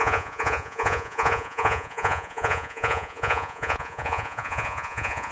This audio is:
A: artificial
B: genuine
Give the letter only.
A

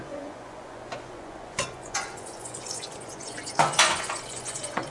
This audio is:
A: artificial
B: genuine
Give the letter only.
A